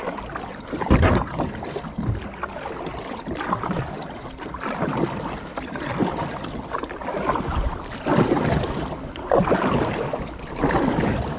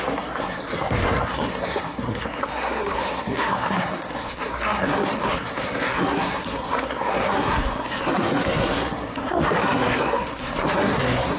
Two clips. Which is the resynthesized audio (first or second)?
second